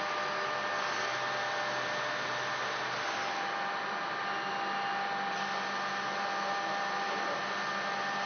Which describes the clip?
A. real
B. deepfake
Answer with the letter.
A